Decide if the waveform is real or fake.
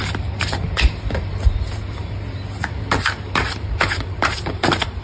fake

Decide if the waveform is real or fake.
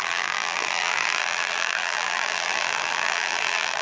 fake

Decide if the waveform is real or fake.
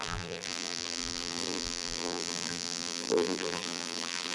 fake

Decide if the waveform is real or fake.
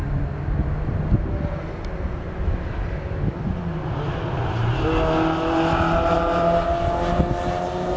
real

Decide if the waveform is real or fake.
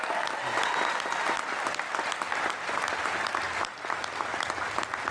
real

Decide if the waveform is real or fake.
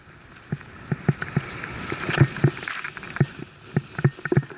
real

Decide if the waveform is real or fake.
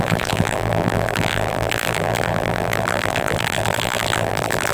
fake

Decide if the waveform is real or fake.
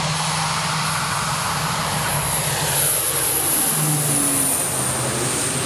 real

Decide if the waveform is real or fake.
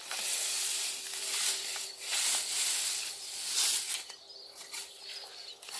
real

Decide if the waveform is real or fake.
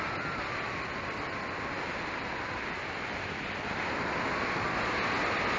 real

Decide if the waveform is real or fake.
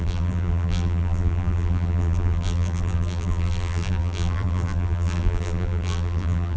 fake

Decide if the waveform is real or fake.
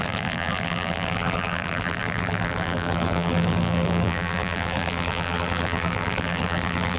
fake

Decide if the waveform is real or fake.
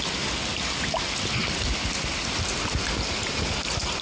real